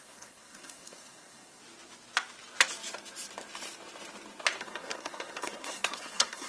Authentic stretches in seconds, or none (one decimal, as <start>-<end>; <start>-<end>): 1.6-4.6